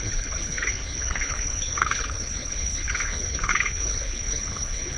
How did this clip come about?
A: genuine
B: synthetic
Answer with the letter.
B